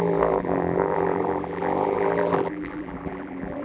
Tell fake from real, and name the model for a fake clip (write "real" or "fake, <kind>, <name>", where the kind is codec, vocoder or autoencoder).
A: fake, vocoder, BigVGAN v2